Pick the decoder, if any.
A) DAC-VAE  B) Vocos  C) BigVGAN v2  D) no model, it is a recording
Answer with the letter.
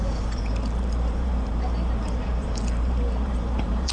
C